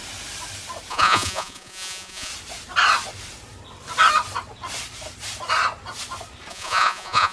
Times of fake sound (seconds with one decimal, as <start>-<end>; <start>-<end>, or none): 0.9-2.3; 6.5-7.3

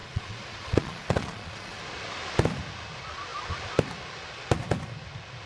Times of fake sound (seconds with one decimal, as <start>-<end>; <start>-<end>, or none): 0.0-1.8

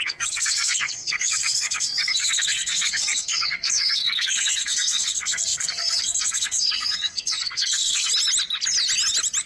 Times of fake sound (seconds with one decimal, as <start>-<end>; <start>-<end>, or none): 0.0-8.1